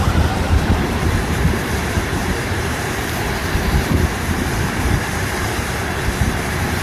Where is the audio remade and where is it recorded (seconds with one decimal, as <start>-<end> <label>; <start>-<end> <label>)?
0.0-3.4 remade; 3.4-4.2 recorded; 4.2-6.8 remade